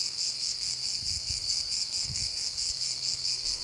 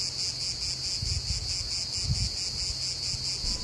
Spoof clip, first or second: first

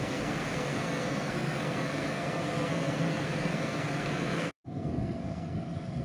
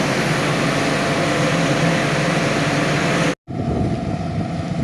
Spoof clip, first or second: first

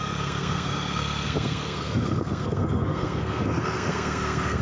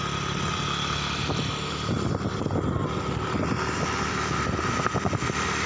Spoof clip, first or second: first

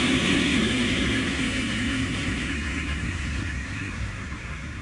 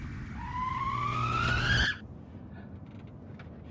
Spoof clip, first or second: first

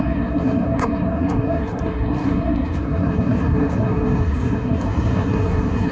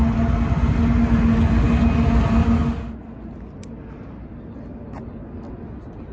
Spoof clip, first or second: first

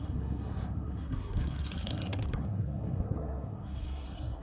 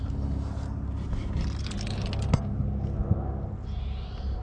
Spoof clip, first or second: first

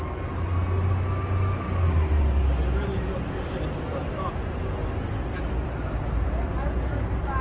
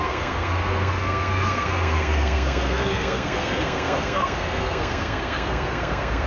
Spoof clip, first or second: second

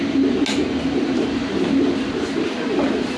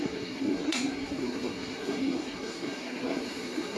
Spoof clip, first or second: second